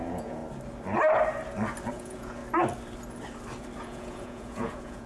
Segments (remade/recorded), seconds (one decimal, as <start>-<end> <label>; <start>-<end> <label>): 0.0-0.4 remade; 0.4-1.9 recorded; 1.9-2.4 remade; 2.4-3.8 recorded; 3.8-5.1 remade